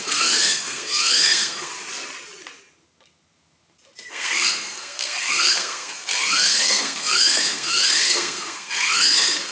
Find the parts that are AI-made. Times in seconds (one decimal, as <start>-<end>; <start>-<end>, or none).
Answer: 0.0-1.7; 4.1-9.5